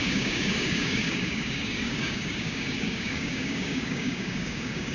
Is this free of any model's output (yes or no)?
no